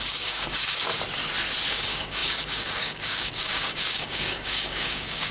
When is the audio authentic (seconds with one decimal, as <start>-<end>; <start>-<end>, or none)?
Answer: 0.9-1.7